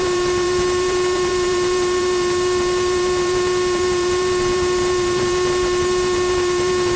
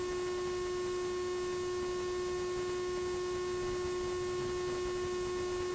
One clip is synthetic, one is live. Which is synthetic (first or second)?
first